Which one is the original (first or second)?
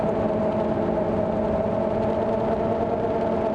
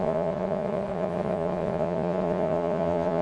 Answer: first